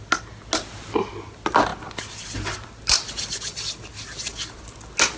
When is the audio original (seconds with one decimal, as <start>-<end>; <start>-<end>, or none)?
0.0-5.2